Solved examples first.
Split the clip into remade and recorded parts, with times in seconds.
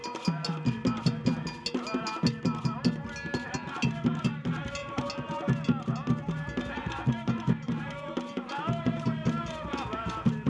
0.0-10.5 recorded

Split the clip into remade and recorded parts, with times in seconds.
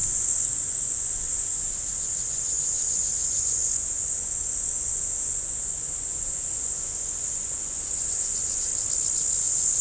0.0-8.7 remade; 8.7-9.4 recorded; 9.4-9.8 remade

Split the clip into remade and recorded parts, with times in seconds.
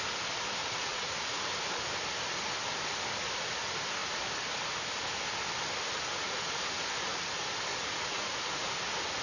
0.0-0.6 recorded; 0.6-1.5 remade; 1.5-7.7 recorded; 7.7-8.3 remade; 8.3-9.2 recorded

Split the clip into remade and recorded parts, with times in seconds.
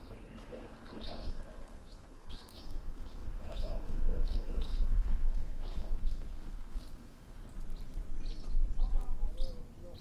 0.0-7.4 remade; 7.4-10.0 recorded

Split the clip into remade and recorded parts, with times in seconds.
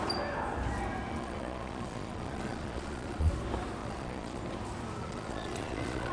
0.0-1.1 recorded; 1.1-3.3 remade; 3.3-3.8 recorded; 3.8-4.4 remade; 4.4-5.0 recorded; 5.0-6.1 remade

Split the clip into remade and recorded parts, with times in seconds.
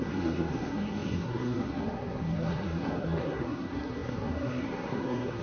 0.0-5.4 remade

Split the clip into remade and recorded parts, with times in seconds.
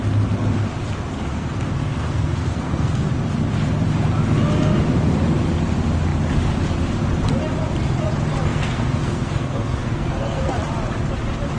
0.0-1.3 recorded; 1.3-3.1 remade; 3.1-8.4 recorded; 8.4-10.5 remade; 10.5-11.6 recorded